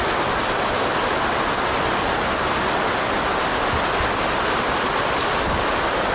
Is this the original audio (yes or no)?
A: yes